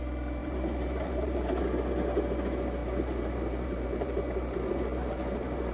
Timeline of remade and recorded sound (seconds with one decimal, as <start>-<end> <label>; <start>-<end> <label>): 0.0-0.4 recorded; 0.4-1.6 remade; 1.6-2.8 recorded; 2.8-5.7 remade